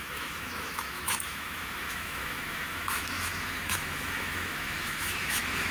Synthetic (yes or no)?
yes